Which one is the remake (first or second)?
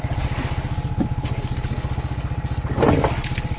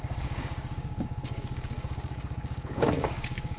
second